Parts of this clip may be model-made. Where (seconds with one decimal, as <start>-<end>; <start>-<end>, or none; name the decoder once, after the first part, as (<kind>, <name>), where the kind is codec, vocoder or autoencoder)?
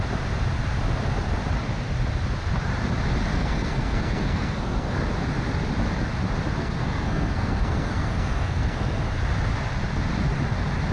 3.3-4.9 (codec, SNAC); 6.6-9.0